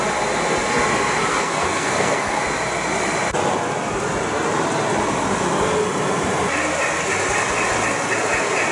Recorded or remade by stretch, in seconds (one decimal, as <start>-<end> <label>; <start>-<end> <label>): 0.0-1.3 recorded; 1.3-2.4 remade; 2.4-8.7 recorded